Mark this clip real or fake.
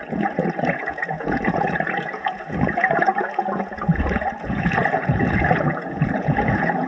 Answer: fake